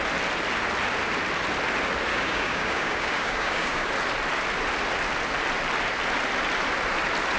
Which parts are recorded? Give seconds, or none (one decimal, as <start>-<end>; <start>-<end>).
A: 0.0-2.1; 3.9-7.4